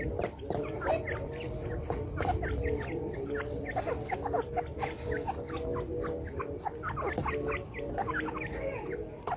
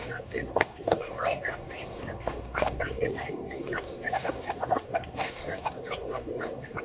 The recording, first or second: first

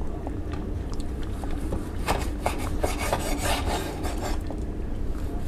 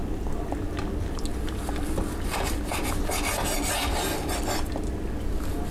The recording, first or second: second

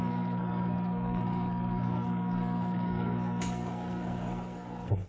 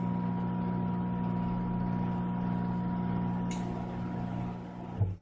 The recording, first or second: second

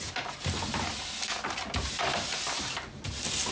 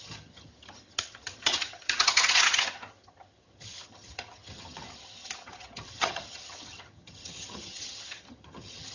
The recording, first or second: first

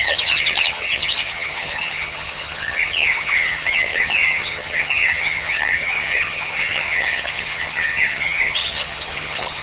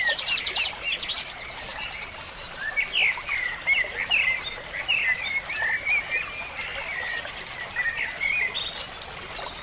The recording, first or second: second